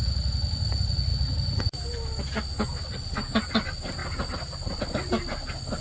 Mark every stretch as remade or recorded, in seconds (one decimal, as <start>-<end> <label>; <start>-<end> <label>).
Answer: 0.0-5.8 recorded